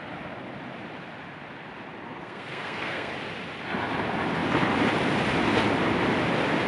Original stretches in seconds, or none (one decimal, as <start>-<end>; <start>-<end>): 0.0-2.2; 3.1-6.7